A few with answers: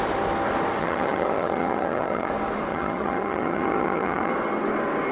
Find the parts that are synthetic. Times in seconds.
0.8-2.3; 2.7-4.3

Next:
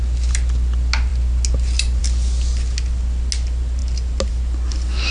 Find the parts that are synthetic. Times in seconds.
none

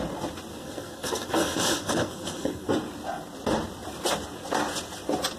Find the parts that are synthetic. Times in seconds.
0.5-2.7